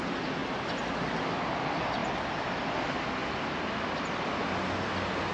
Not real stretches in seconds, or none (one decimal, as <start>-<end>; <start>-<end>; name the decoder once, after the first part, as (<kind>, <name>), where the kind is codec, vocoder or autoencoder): none